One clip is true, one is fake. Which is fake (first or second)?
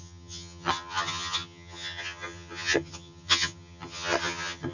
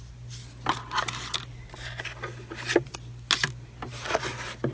first